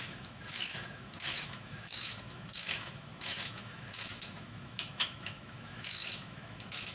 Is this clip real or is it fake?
fake